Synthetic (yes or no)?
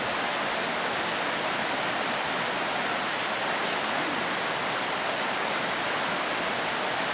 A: no